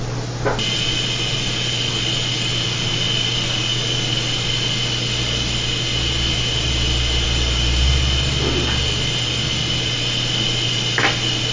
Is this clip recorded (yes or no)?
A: yes